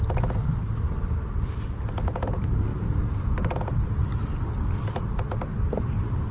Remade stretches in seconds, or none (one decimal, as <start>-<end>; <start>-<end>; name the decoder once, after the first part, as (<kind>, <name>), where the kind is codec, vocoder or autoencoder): none

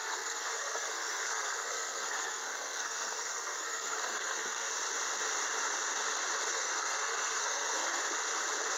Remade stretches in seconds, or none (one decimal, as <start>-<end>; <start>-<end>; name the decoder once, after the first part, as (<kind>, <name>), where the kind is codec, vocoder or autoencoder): 0.0-4.7 (codec, SNAC); 6.5-8.0